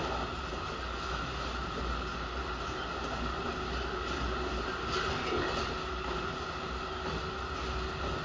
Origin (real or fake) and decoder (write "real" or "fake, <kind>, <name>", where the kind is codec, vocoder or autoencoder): real